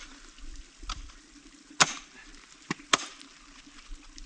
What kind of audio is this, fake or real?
real